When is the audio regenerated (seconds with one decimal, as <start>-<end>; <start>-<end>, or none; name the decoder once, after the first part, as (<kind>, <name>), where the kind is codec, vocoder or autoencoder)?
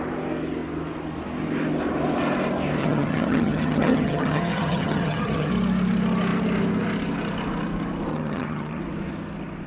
2.8-5.5 (vocoder, HiFi-GAN); 8.1-8.8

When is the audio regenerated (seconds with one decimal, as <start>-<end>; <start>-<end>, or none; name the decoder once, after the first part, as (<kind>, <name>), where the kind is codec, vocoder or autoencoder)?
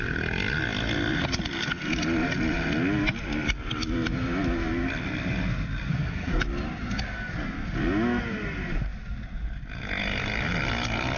5.9-6.4 (codec, SNAC)